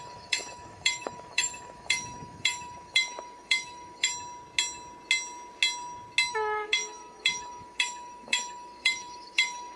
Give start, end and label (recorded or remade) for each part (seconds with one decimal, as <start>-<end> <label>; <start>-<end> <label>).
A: 0.0-4.1 remade; 4.1-6.3 recorded; 6.3-9.8 remade